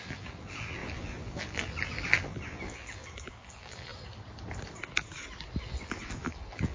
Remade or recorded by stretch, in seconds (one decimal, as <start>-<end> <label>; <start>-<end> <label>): 0.0-3.9 remade; 3.9-5.6 recorded; 5.6-6.7 remade

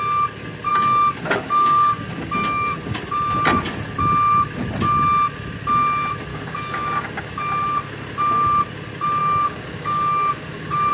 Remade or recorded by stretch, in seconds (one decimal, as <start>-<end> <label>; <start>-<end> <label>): 0.0-0.7 recorded; 0.7-3.0 remade; 3.0-6.3 recorded; 6.3-7.4 remade; 7.4-9.2 recorded; 9.2-10.9 remade

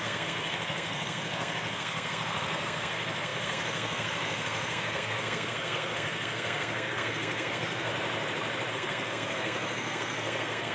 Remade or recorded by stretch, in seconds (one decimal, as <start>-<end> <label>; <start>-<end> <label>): 0.0-7.9 remade; 7.9-8.7 recorded; 8.7-10.7 remade

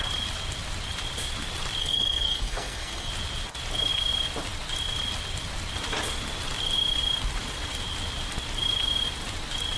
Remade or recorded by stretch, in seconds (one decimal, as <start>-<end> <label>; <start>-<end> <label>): 0.0-1.8 recorded; 1.8-3.1 remade; 3.1-9.8 recorded

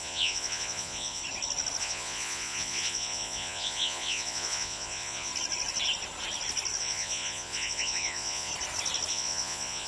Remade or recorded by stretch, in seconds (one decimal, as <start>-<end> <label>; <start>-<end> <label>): 0.0-1.2 remade; 1.2-1.8 recorded; 1.8-5.3 remade; 5.3-6.8 recorded; 6.8-8.5 remade; 8.5-9.1 recorded; 9.1-9.9 remade

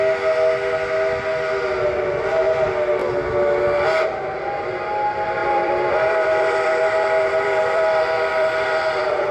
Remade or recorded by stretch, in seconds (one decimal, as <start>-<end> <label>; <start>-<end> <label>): 0.0-5.4 recorded; 5.4-9.3 remade

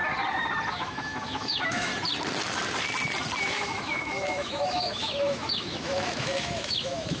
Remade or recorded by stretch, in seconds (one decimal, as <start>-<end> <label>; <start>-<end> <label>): 0.0-0.7 recorded; 0.7-1.9 remade; 1.9-3.4 recorded; 3.4-7.2 remade